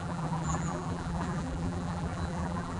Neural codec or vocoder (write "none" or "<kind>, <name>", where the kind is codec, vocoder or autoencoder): vocoder, BigVGAN v2